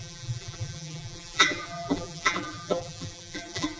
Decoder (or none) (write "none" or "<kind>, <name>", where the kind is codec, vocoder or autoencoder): vocoder, BigVGAN v2